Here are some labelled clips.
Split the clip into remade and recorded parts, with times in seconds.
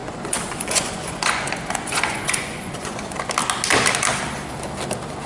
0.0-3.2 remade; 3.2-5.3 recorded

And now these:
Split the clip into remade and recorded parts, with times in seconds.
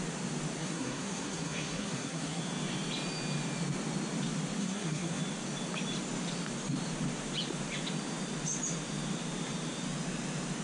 0.0-0.6 recorded; 0.6-2.4 remade; 2.4-4.6 recorded; 4.6-5.2 remade; 5.2-10.6 recorded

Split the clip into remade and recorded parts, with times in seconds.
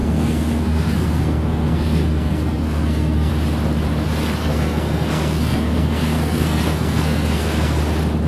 0.0-3.3 remade; 3.3-4.4 recorded; 4.4-7.8 remade; 7.8-8.3 recorded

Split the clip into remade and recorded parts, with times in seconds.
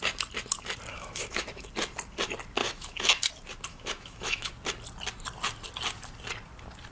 0.0-0.9 recorded; 0.9-1.7 remade; 1.7-2.6 recorded; 2.6-3.3 remade; 3.3-3.7 recorded; 3.7-4.5 remade; 4.5-6.9 recorded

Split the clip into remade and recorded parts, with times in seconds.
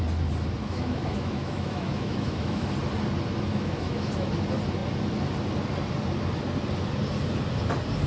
0.0-0.6 recorded; 0.6-2.7 remade; 2.7-3.5 recorded; 3.5-4.3 remade; 4.3-8.1 recorded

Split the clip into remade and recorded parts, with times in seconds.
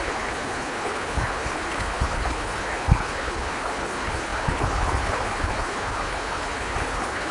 0.0-7.3 remade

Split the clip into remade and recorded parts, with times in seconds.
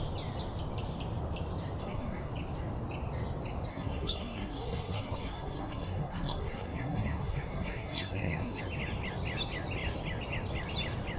0.0-1.8 recorded; 1.8-2.3 remade; 2.3-3.7 recorded; 3.7-8.6 remade; 8.6-11.2 recorded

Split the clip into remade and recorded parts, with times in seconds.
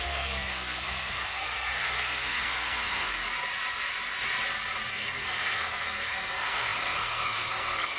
0.0-3.2 remade; 3.2-4.9 recorded; 4.9-8.0 remade